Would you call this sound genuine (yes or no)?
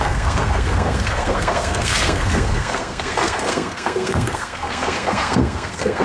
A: no